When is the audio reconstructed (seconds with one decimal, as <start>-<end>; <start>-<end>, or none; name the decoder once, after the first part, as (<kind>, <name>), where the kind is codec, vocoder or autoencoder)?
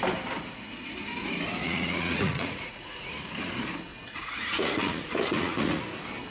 1.6-3.1 (vocoder, Vocos); 3.9-5.8